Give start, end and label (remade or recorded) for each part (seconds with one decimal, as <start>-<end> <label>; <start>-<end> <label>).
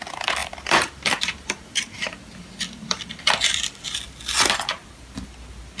0.0-0.4 recorded; 0.4-3.9 remade; 3.9-5.8 recorded